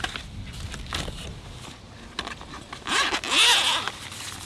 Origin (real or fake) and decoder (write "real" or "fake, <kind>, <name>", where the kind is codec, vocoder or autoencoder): real